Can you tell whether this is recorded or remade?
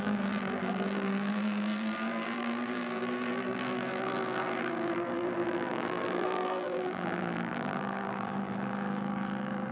remade